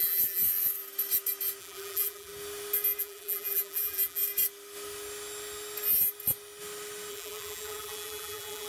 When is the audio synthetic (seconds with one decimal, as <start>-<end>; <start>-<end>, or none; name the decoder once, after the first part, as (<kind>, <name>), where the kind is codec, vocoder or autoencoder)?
0.0-0.4 (vocoder, BigVGAN v2); 1.6-2.3; 3.0-4.2; 7.1-8.7